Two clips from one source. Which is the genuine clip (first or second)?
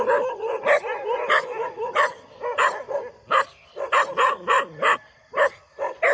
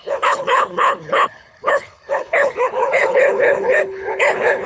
first